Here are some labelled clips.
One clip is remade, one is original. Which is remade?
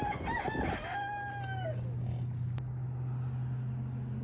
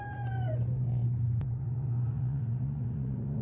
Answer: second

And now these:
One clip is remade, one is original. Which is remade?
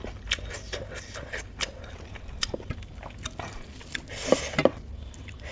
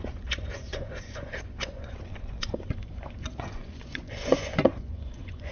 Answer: second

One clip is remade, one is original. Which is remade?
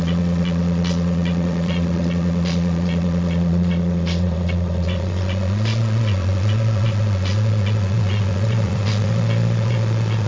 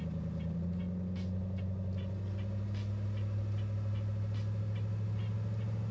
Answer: first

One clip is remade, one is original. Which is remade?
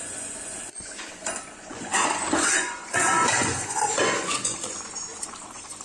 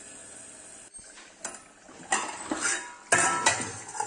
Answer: first